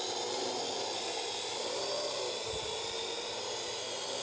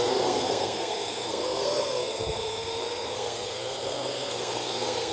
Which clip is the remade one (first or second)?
second